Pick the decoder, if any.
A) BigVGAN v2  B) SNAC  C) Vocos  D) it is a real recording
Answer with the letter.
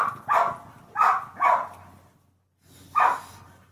D